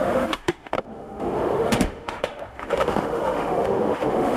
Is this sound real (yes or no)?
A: no